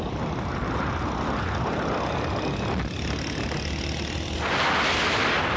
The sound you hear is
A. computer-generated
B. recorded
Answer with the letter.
B